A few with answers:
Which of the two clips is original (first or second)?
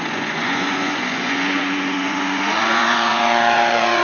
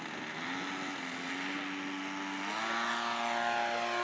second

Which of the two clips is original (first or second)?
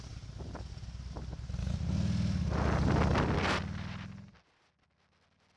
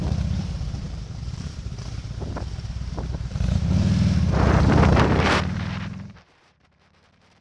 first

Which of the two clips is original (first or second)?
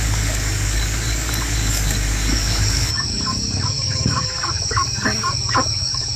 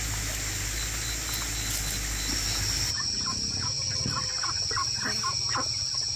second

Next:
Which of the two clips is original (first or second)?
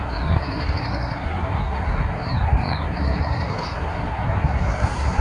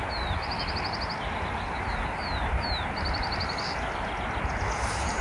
second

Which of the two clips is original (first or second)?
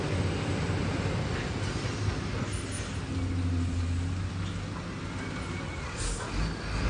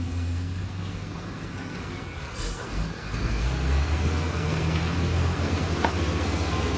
first